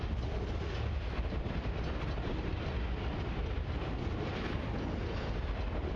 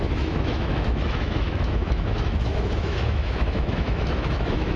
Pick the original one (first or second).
first